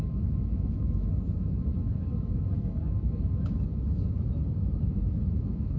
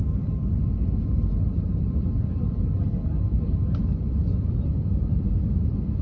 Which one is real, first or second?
second